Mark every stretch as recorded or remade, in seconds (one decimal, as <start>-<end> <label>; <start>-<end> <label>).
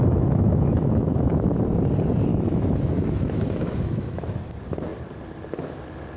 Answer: 0.0-1.3 remade; 1.3-2.3 recorded; 2.3-4.5 remade; 4.5-6.2 recorded